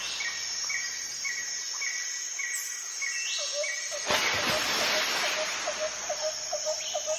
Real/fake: real